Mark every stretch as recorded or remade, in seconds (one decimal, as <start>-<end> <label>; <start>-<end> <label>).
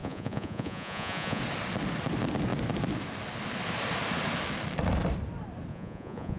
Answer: 0.0-1.4 remade; 1.4-5.7 recorded; 5.7-6.4 remade